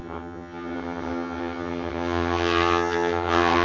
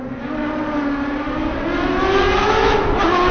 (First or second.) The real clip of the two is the second